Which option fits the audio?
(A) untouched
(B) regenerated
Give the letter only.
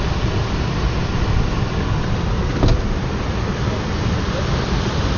A